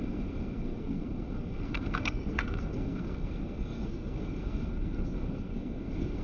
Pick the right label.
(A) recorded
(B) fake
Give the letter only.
B